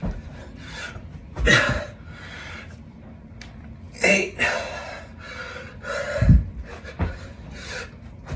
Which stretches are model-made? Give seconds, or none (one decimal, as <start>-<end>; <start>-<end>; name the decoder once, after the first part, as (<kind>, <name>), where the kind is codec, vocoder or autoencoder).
none